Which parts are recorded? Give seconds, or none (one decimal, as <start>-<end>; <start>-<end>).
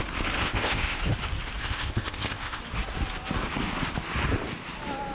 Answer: 0.0-0.4; 1.0-1.6; 2.6-5.1